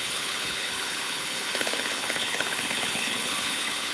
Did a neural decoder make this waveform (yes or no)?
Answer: yes